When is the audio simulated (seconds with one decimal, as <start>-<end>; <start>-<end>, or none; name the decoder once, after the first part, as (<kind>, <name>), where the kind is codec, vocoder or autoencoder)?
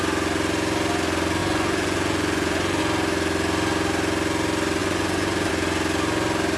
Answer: 1.4-2.8 (vocoder, Vocos); 4.8-5.5